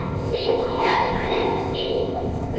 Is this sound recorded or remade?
remade